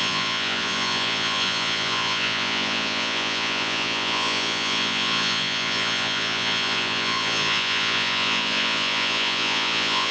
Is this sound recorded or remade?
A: remade